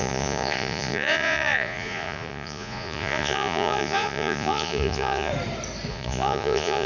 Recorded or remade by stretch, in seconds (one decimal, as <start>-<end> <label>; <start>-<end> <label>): 0.0-5.3 remade; 5.3-5.9 recorded; 5.9-6.9 remade